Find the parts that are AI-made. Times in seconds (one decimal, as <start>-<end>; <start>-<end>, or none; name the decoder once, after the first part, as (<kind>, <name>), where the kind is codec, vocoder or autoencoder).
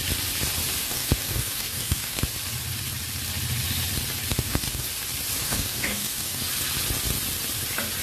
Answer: 0.8-2.2 (codec, DAC); 4.3-4.9; 5.4-6.4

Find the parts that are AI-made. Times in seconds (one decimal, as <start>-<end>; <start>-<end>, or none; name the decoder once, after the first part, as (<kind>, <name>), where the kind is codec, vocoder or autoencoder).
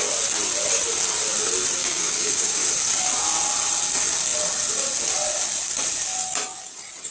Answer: 1.8-2.7 (codec, DAC)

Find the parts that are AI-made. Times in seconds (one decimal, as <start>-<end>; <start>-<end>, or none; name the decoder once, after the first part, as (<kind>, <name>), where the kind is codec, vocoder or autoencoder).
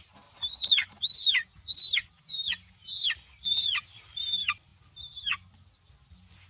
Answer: none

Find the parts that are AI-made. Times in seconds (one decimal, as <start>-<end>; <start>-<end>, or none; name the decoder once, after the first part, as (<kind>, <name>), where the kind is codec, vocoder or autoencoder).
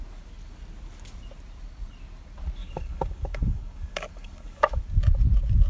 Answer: 2.6-4.8 (codec, DAC)